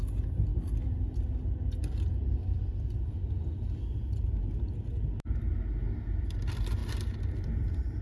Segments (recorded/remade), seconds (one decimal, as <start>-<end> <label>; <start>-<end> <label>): 0.0-8.0 recorded